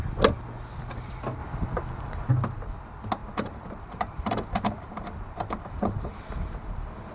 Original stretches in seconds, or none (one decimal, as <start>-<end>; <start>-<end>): 0.0-1.4; 2.3-3.2